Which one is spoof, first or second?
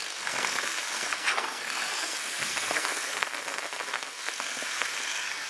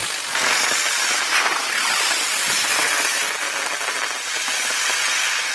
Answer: first